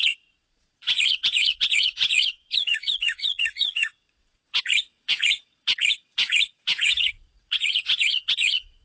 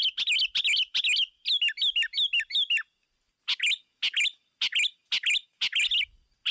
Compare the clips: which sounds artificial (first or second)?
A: first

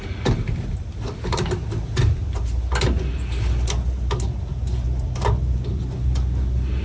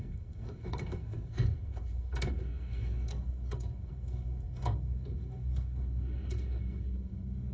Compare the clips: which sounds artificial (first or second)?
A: second